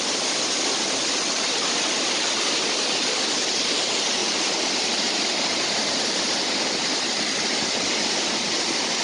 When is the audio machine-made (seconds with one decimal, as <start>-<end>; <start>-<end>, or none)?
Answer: none